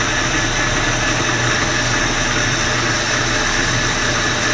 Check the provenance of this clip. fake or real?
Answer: real